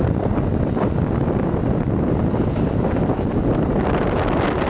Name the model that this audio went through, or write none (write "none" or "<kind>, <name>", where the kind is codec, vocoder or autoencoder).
none